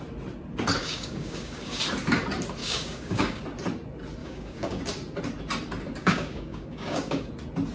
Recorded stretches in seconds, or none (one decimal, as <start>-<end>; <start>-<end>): 0.0-0.8; 1.8-2.6; 3.4-4.2; 4.8-6.0; 7.3-7.7